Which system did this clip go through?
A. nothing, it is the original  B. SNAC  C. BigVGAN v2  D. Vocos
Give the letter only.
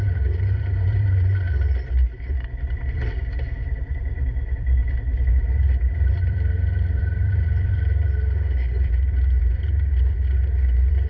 C